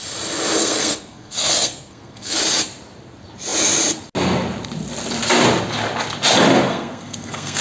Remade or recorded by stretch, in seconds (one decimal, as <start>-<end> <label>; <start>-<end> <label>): 0.0-0.6 recorded; 0.6-2.4 remade; 2.4-6.7 recorded; 6.7-7.6 remade